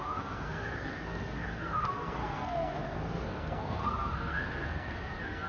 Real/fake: fake